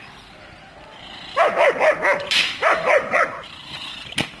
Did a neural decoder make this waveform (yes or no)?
no